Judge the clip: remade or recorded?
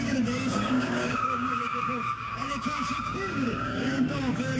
remade